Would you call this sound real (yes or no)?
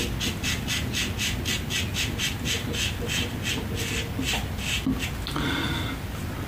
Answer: yes